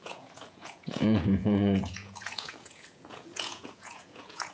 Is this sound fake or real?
fake